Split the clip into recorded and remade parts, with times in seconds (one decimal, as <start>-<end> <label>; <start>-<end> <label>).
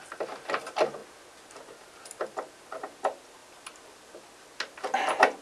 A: 0.0-5.4 recorded